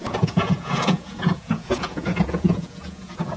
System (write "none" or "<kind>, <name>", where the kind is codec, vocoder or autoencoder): vocoder, Vocos